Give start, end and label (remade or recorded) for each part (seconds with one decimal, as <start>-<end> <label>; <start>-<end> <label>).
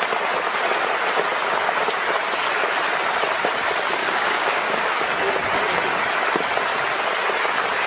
0.0-4.0 recorded; 4.0-4.9 remade; 4.9-7.9 recorded